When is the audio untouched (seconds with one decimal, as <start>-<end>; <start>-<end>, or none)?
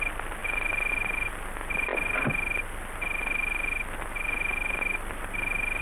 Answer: 0.0-5.8